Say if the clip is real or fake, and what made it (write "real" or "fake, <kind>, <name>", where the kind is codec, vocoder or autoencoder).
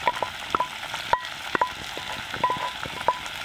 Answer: real